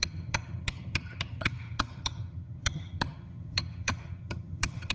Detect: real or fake fake